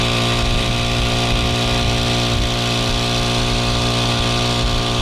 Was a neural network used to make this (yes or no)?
no